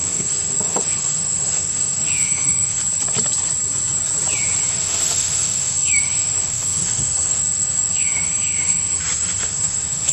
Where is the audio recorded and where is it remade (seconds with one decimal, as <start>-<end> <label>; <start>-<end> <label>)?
0.0-2.8 remade; 2.8-4.7 recorded; 4.7-10.1 remade